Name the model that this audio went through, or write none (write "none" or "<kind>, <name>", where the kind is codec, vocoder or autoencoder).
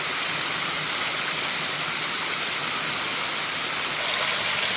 none